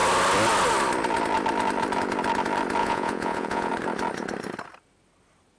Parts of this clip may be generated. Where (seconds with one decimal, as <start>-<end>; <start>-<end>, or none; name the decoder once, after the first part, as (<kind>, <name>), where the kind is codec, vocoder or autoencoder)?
2.8-3.7 (vocoder, Vocos)